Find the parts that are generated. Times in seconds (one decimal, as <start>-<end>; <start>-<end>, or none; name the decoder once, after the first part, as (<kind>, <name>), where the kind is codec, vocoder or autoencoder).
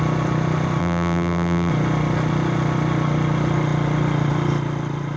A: 0.8-1.7 (vocoder, BigVGAN v2)